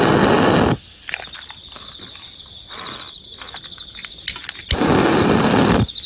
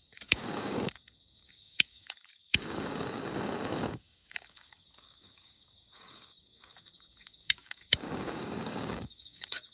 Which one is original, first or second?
first